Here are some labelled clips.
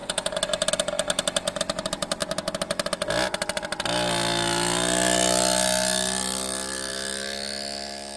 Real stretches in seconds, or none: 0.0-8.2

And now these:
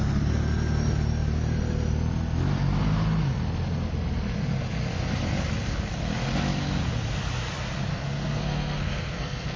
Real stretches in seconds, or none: 0.0-7.9

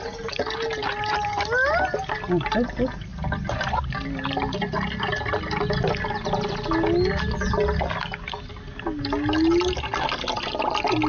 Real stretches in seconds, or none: 0.0-11.1

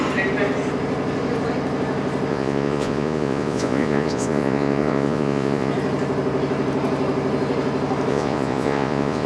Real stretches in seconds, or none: 0.0-2.3; 5.7-8.1

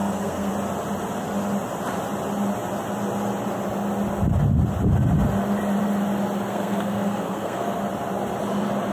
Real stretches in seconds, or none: 0.5-6.5; 7.8-8.9

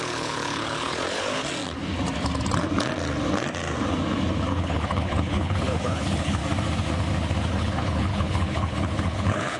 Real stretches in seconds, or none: 1.5-4.5; 6.4-7.5

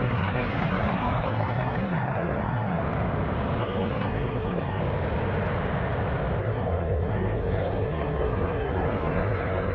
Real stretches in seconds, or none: 2.8-3.6; 4.8-6.4